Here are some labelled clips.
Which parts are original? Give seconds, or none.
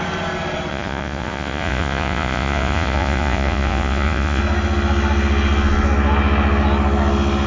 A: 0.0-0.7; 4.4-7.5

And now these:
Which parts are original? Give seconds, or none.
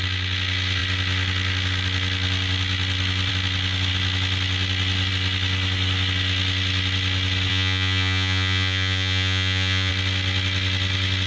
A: 0.0-7.5; 9.9-11.3